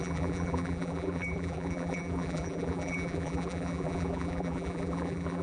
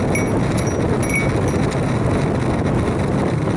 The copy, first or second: first